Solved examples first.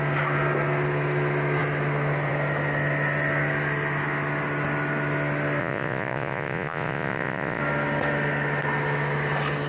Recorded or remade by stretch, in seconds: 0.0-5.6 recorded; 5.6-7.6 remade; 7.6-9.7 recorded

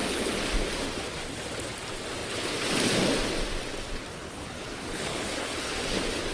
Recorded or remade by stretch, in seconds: 0.0-4.1 recorded; 4.1-5.8 remade; 5.8-6.3 recorded